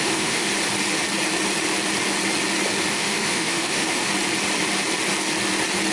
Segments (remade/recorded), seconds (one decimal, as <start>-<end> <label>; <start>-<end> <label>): 0.0-0.5 remade; 0.5-2.9 recorded; 2.9-4.1 remade; 4.1-5.9 recorded